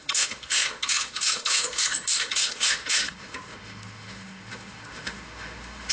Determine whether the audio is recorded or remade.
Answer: remade